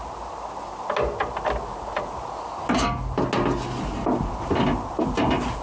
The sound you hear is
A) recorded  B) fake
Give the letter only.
A